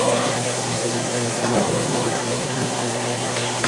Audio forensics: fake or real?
fake